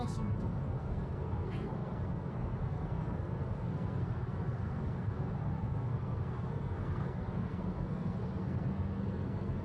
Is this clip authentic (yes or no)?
no